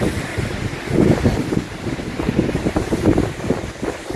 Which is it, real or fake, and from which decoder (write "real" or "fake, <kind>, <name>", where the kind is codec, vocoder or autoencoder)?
real